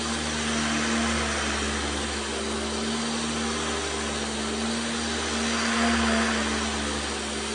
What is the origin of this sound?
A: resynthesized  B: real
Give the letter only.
B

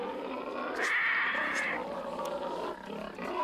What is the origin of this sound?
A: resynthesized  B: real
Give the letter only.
B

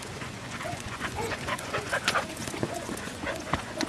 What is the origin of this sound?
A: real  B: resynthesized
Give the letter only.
B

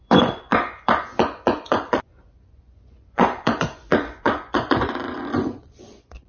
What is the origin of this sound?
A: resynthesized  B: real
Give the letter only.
A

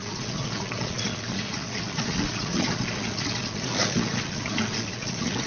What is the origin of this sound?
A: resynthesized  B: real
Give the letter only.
A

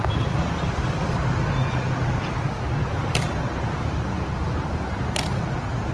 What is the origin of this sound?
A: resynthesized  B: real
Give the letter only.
B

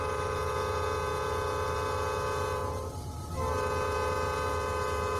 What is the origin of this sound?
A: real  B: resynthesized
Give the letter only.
A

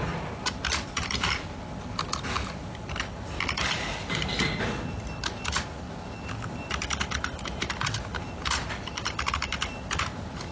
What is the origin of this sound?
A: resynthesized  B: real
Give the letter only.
B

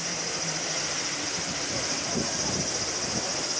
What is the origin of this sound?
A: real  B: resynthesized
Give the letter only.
A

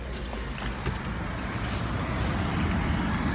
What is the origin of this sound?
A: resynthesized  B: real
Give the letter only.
B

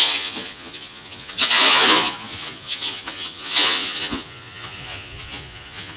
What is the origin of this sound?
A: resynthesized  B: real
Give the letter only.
A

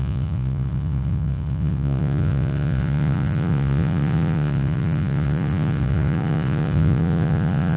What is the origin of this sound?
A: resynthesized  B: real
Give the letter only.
A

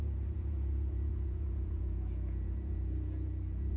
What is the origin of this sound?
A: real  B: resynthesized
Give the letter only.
B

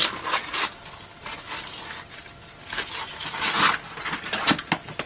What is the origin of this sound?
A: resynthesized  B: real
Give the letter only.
B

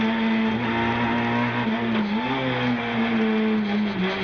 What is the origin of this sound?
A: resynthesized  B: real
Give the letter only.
B